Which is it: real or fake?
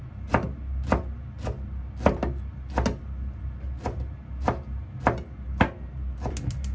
real